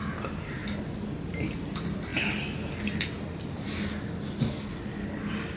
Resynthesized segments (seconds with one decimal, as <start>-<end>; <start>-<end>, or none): 0.0-0.6; 1.2-2.1